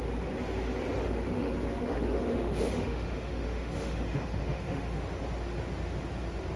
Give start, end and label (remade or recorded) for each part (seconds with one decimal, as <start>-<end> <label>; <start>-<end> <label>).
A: 0.0-1.0 recorded; 1.0-5.0 remade; 5.0-6.6 recorded

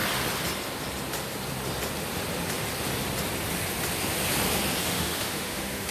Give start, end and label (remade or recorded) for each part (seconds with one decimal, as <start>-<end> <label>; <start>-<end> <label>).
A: 0.0-4.8 recorded; 4.8-5.9 remade

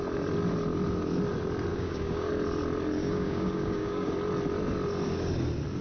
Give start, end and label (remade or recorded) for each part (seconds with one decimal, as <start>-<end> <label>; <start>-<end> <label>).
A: 0.0-1.7 recorded; 1.7-2.3 remade; 2.3-3.0 recorded; 3.0-4.1 remade; 4.1-5.8 recorded